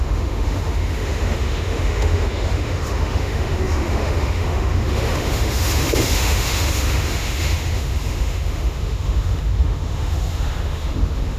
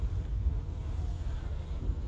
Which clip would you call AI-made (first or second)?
first